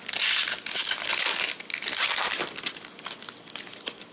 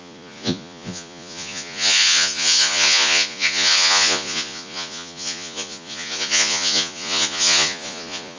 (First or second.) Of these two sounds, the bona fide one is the first